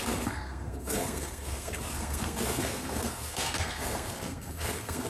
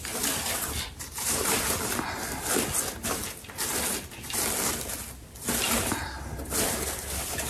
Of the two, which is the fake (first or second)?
first